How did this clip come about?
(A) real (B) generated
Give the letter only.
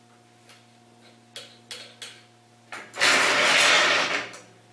A